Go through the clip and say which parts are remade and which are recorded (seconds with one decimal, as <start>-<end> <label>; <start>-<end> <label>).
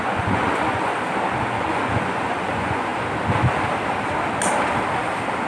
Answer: 0.0-0.9 remade; 0.9-1.5 recorded; 1.5-2.9 remade; 2.9-5.5 recorded